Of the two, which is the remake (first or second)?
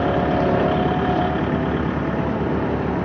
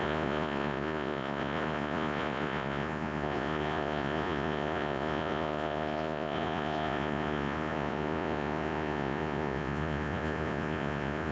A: second